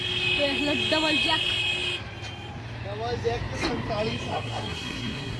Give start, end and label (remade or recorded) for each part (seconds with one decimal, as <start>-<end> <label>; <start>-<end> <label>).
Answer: 0.0-4.3 recorded; 4.3-5.4 remade